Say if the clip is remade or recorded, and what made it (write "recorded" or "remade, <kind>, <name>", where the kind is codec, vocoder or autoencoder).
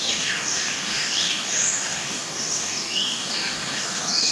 remade, codec, DAC